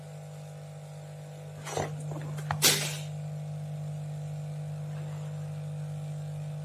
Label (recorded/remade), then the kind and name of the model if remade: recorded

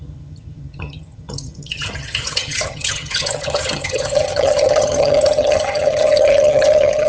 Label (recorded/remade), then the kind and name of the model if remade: remade, vocoder, HiFi-GAN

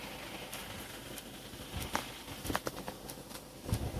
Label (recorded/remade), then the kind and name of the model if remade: recorded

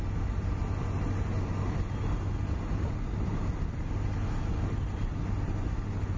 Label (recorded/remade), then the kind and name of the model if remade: recorded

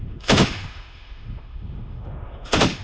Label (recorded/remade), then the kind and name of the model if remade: remade, autoencoder, DAC-VAE